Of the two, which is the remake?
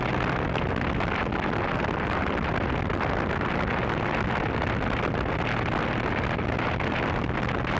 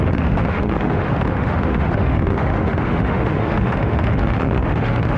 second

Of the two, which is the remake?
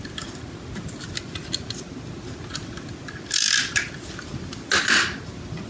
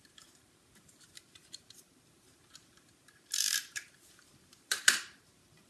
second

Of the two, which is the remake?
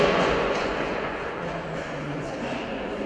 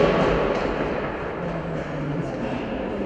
first